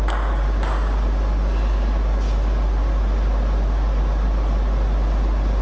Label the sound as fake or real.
real